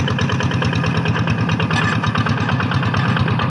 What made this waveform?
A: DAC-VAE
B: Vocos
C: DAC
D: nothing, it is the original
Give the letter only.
D